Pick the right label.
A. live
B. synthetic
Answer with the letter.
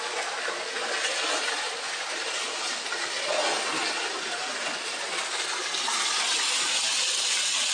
A